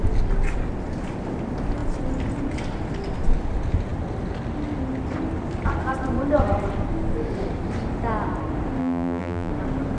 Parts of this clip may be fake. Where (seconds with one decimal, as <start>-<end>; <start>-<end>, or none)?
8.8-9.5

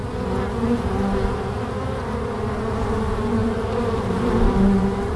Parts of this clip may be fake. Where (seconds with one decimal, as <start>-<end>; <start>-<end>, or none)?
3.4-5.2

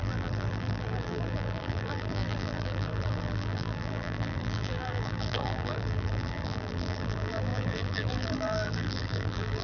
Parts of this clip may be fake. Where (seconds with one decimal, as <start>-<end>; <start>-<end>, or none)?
0.0-9.6